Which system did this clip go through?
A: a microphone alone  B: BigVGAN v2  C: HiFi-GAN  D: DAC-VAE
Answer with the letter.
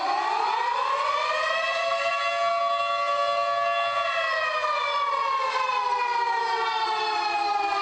A